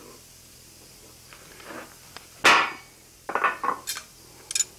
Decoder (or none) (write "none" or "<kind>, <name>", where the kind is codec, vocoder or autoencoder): none